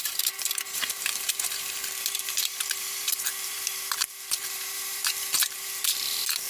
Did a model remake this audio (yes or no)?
yes